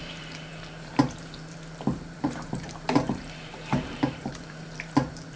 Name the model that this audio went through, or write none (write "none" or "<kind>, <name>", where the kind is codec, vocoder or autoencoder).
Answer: vocoder, BigVGAN v2